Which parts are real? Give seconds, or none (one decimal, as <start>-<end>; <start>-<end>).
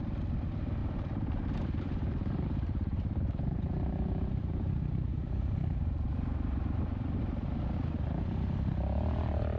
0.0-0.8; 5.8-9.6